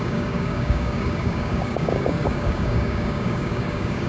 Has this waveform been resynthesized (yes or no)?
yes